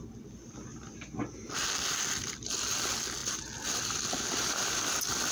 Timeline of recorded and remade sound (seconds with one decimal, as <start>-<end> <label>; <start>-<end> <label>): 0.0-5.3 recorded